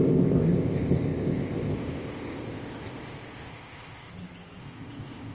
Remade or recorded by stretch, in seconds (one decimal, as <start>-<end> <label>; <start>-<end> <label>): 0.0-4.1 remade; 4.1-4.6 recorded; 4.6-5.3 remade